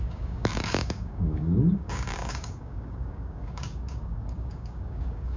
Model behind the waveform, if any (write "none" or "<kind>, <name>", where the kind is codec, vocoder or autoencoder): codec, DAC